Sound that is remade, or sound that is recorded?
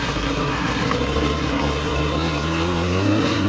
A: remade